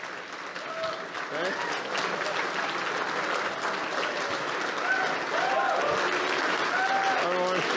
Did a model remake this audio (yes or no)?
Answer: no